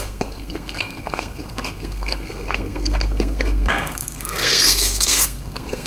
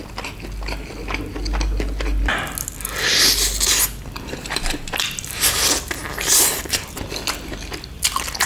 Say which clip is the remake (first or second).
first